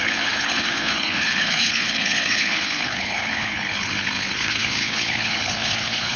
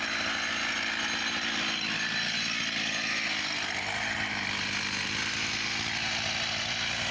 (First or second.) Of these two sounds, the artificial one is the first